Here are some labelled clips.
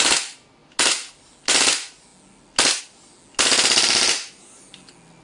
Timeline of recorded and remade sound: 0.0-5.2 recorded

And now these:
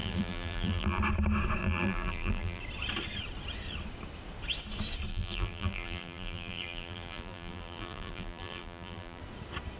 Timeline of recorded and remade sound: 0.0-1.0 remade; 1.0-1.6 recorded; 1.6-2.6 remade; 2.6-5.1 recorded; 5.1-9.2 remade; 9.2-9.8 recorded

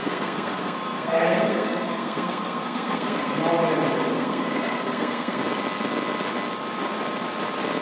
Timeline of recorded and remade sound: 0.0-3.4 remade; 3.4-4.1 recorded; 4.1-5.4 remade; 5.4-7.8 recorded

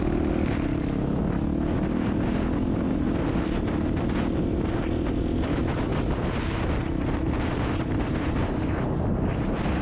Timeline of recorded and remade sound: 0.0-9.8 recorded

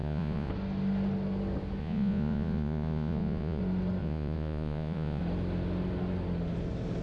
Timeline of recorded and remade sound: 0.0-0.5 remade; 0.5-1.8 recorded; 1.8-3.6 remade; 3.6-4.0 recorded; 4.0-5.2 remade; 5.2-7.0 recorded

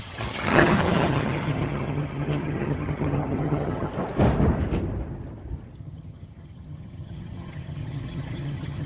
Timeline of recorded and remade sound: 0.0-3.9 remade; 3.9-5.8 recorded; 5.8-8.9 remade

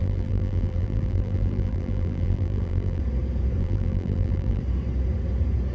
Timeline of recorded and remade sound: 0.0-3.0 remade; 3.0-3.6 recorded; 3.6-4.6 remade; 4.6-5.7 recorded

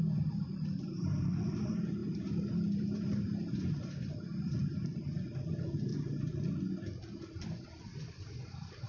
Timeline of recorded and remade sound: 0.0-2.0 recorded; 2.0-3.6 remade; 3.6-4.6 recorded; 4.6-5.1 remade; 5.1-5.9 recorded; 5.9-6.5 remade; 6.5-8.9 recorded